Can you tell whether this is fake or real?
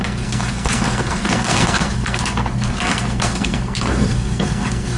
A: fake